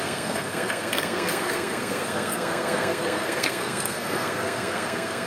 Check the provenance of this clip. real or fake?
fake